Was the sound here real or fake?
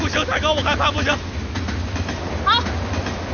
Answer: real